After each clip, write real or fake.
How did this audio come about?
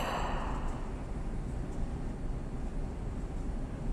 real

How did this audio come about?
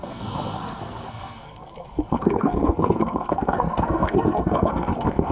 fake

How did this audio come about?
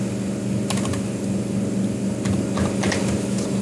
real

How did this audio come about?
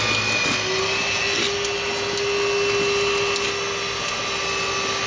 real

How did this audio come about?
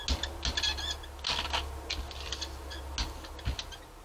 real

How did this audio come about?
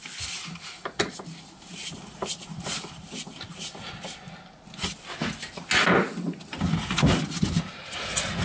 real